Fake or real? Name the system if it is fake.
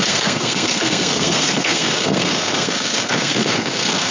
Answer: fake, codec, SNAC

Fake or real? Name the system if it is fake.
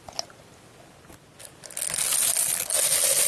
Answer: real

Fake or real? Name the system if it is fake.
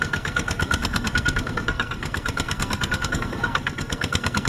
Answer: fake, codec, SNAC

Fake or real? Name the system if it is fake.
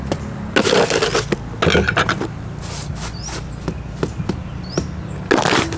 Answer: real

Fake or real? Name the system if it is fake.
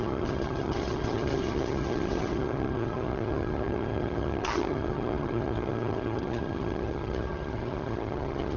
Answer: fake, vocoder, HiFi-GAN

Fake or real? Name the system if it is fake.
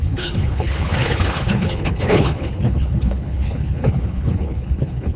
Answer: fake, codec, HILCodec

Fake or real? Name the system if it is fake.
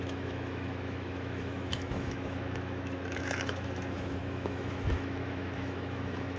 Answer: fake, autoencoder, DAC-VAE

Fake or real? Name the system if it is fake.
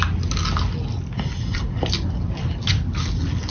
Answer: real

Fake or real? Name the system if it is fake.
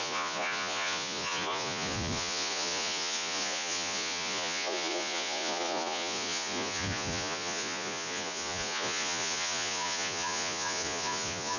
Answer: fake, vocoder, Vocos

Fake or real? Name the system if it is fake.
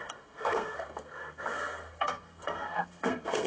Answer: fake, codec, SNAC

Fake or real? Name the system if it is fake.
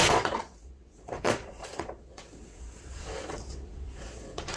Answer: fake, vocoder, Vocos